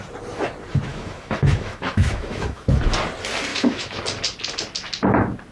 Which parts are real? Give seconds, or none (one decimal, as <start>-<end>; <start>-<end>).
0.0-0.9; 2.7-3.5; 4.0-5.5